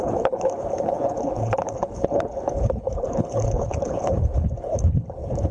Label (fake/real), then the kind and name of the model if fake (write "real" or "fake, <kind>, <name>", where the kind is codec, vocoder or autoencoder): fake, codec, HILCodec